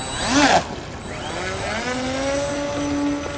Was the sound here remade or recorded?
recorded